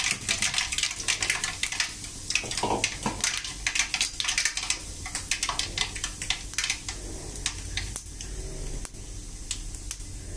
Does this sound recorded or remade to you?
recorded